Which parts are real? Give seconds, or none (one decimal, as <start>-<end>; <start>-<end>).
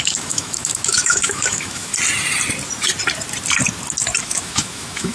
1.9-4.2